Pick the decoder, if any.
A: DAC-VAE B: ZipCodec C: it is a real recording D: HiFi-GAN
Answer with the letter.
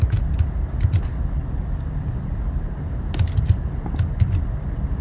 C